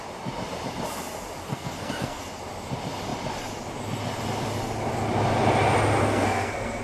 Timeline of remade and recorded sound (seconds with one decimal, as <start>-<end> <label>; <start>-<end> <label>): 0.0-1.5 recorded; 1.5-2.2 remade; 2.2-6.0 recorded; 6.0-6.8 remade